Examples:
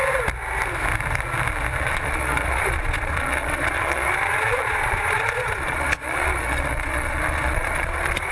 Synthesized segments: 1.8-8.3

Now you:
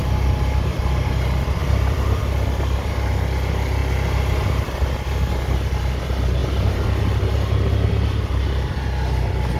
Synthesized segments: 1.6-2.2; 6.4-7.0

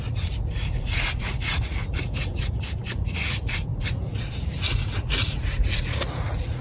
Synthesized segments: 0.0-6.6

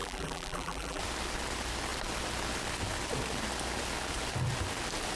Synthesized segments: 0.0-1.0